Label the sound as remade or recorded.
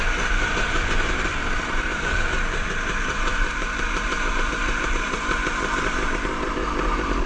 remade